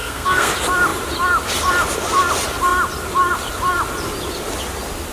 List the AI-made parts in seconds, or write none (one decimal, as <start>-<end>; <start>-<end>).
0.0-0.5